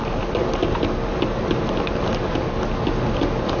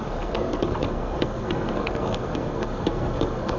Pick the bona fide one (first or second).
first